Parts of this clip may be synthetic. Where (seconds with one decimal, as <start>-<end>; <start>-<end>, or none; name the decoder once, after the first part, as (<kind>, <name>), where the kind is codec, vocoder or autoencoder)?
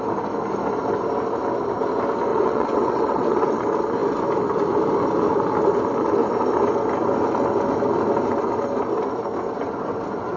2.3-3.6 (vocoder, WaveNeXt)